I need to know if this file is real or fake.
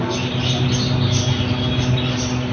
real